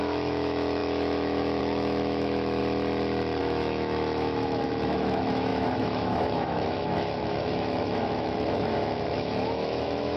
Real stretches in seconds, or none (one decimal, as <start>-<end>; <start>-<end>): 2.6-3.4